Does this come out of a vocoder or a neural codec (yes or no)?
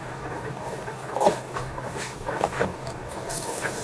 yes